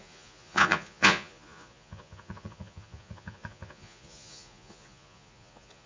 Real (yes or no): no